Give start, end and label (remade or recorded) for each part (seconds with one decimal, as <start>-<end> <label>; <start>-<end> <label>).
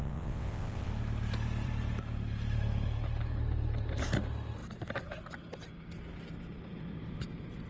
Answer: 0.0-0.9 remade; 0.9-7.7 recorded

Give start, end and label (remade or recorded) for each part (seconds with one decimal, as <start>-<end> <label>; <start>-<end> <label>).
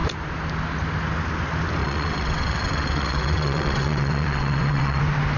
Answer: 0.0-1.8 recorded; 1.8-5.0 remade; 5.0-5.4 recorded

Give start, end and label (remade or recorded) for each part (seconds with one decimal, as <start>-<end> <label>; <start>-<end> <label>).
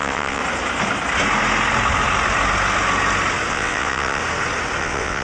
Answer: 0.0-0.4 remade; 0.4-3.5 recorded; 3.5-4.2 remade; 4.2-4.8 recorded; 4.8-5.2 remade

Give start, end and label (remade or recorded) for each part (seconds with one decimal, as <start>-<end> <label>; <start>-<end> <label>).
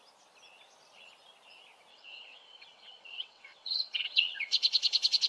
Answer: 0.0-1.9 recorded; 1.9-5.3 remade